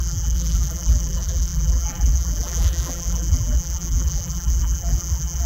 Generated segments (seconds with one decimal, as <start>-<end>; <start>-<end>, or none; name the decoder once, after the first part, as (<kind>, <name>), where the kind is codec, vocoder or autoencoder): 0.0-5.5 (vocoder, BigVGAN v2)